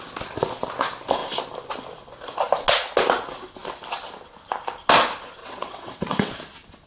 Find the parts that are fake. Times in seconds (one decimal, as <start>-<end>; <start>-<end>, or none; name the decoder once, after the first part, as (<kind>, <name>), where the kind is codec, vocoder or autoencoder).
5.4-6.3 (vocoder, WaveNeXt)